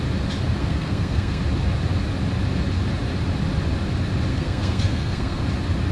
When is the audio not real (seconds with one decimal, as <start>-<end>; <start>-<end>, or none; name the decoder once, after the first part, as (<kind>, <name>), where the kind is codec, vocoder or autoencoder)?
0.6-1.4 (codec, SNAC); 4.3-5.4